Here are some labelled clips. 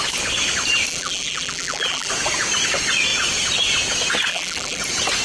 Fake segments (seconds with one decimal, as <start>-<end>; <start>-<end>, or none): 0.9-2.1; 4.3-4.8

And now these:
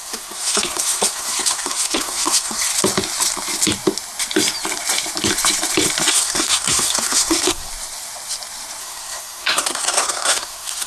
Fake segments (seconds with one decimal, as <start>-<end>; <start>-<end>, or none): 0.0-2.7; 6.1-7.7; 8.8-10.9

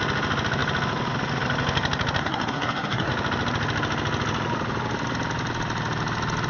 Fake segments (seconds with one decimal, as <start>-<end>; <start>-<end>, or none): 2.2-3.1

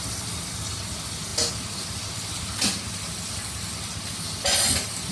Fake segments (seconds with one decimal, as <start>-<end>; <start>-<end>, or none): none